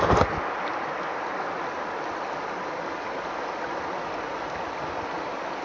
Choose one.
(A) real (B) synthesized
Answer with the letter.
A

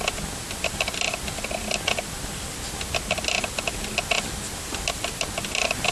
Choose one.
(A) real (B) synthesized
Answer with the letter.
A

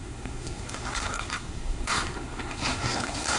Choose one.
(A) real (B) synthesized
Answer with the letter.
B